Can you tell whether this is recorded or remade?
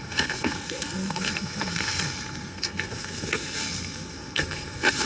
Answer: remade